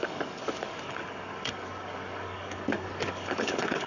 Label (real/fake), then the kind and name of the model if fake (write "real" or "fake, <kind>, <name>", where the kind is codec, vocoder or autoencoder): fake, codec, DAC